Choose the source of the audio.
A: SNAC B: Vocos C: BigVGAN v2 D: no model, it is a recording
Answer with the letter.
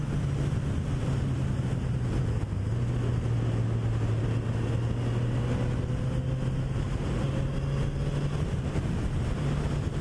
D